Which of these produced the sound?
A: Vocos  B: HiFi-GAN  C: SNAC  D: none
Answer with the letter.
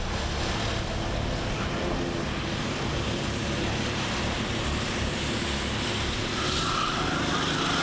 D